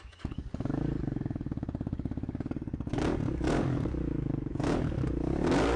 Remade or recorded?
remade